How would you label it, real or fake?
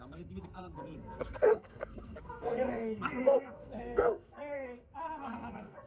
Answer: fake